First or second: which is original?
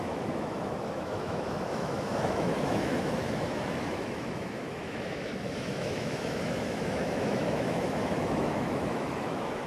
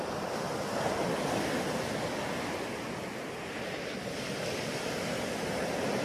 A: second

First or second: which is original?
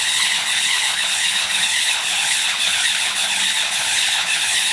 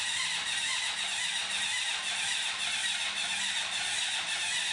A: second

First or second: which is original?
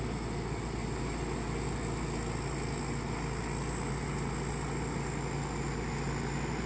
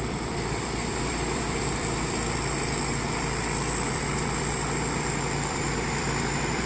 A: first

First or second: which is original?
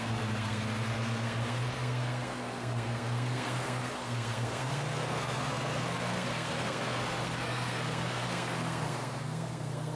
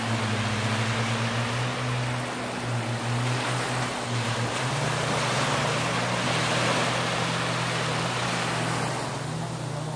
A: second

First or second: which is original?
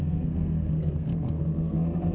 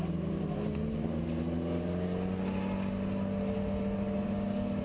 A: second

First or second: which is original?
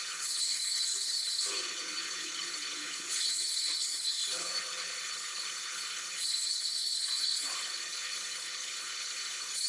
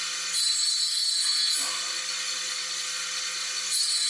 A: second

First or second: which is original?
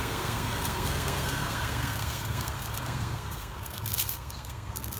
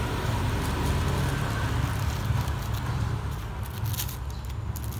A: second